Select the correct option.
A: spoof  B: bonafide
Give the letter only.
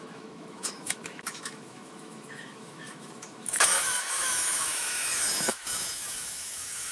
A